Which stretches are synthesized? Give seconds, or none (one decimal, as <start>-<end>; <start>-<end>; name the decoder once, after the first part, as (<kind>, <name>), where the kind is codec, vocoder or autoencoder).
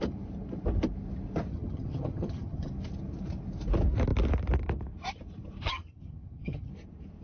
1.5-2.7 (vocoder, HiFi-GAN); 5.6-6.7